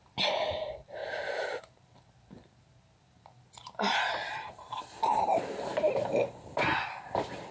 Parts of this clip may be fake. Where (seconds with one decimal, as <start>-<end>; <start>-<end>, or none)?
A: 1.0-1.6; 3.6-5.4